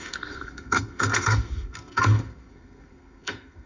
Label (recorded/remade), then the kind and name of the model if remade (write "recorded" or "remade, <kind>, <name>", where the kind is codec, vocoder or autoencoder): remade, codec, SNAC